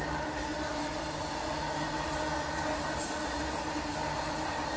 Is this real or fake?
real